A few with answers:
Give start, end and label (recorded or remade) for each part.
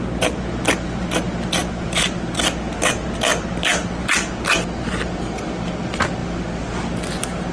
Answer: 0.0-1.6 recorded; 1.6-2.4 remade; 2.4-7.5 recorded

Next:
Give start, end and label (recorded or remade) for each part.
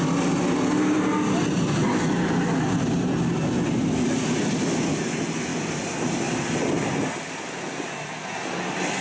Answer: 0.0-9.0 recorded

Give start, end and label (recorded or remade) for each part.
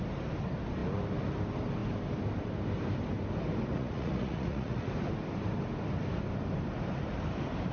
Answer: 0.0-3.7 recorded; 3.7-4.9 remade; 4.9-7.7 recorded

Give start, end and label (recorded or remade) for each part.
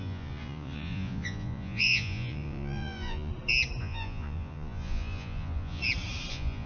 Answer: 0.0-3.3 remade; 3.3-3.8 recorded; 3.8-5.8 remade; 5.8-6.3 recorded; 6.3-6.7 remade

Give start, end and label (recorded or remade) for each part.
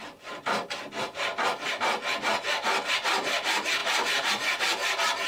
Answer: 0.0-3.8 recorded; 3.8-4.3 remade; 4.3-5.3 recorded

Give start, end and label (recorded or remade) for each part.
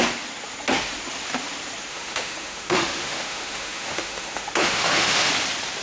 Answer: 0.0-1.9 recorded; 1.9-5.3 remade; 5.3-5.8 recorded